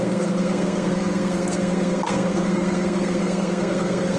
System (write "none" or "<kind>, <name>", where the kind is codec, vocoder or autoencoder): codec, SNAC